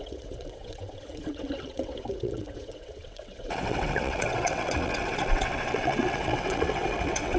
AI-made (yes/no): yes